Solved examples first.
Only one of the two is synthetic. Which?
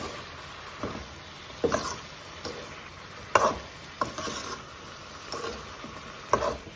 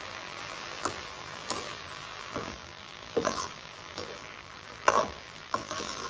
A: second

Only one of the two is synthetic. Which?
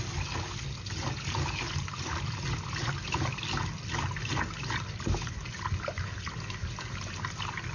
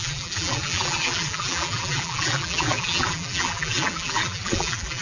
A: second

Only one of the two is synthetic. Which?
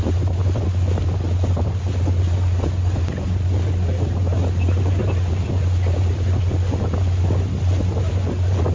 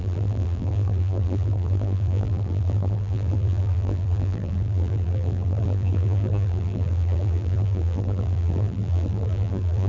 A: second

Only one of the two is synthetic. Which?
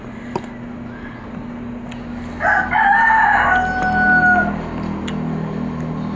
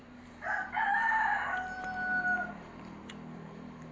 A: second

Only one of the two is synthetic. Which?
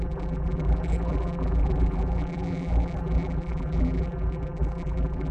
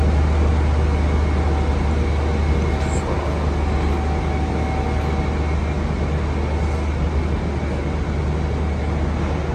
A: first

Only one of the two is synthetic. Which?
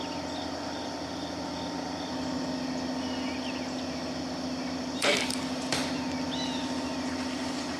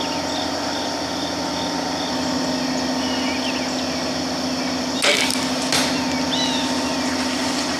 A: first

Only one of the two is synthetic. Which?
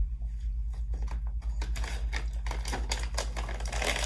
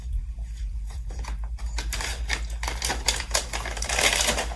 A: second